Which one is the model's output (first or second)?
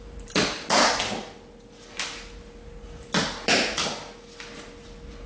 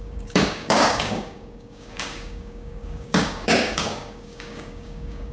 second